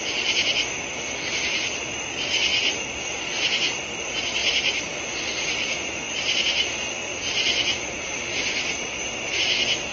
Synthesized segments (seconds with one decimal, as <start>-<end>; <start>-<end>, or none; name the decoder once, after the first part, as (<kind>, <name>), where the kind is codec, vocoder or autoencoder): none